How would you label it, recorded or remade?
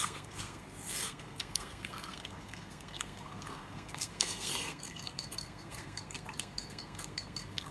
remade